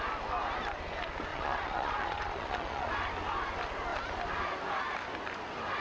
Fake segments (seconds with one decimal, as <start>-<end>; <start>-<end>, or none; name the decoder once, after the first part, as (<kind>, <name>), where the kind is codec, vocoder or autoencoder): 1.3-2.9 (vocoder, Vocos)